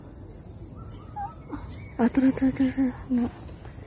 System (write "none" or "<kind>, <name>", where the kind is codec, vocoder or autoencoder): none